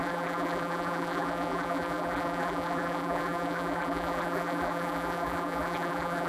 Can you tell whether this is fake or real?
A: fake